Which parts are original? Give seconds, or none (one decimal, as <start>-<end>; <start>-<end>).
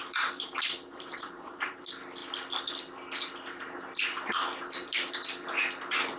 1.8-6.2